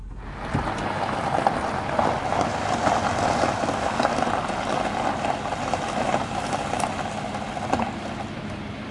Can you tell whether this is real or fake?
real